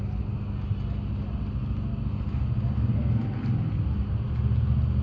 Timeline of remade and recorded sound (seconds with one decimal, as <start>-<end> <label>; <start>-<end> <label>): 0.0-5.0 recorded